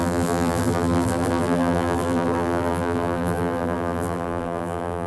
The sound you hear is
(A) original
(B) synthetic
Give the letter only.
B